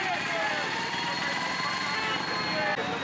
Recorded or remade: recorded